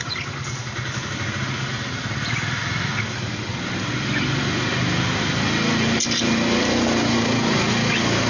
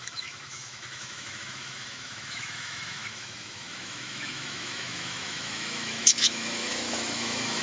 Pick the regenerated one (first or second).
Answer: second